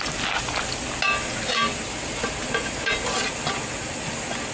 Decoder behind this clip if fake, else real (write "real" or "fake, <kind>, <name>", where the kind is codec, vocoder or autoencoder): real